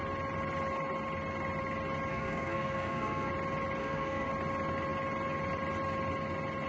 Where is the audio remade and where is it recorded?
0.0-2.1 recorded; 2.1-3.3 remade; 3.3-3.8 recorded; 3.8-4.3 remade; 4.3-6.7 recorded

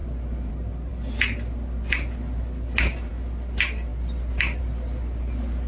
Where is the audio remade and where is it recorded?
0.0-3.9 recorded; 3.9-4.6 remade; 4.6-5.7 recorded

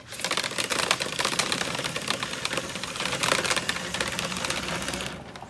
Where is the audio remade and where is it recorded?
0.0-0.7 recorded; 0.7-3.3 remade; 3.3-5.5 recorded